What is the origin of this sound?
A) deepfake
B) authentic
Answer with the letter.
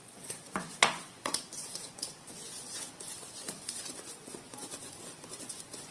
A